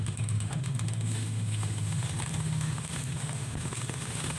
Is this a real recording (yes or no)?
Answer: no